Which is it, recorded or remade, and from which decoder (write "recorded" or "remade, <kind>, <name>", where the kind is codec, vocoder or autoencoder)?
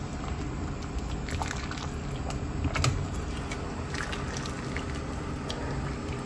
recorded